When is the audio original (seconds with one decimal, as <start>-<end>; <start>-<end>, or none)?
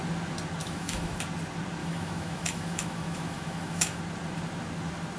0.0-0.6; 1.2-1.8; 4.0-5.2